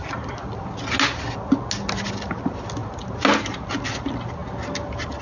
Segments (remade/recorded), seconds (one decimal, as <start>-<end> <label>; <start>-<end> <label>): 0.0-5.2 recorded